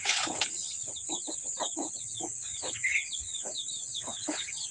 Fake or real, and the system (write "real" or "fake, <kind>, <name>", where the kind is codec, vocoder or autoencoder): fake, codec, HILCodec